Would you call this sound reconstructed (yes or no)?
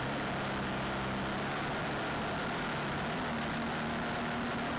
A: no